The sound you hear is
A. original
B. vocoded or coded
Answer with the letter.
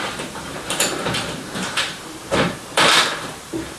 B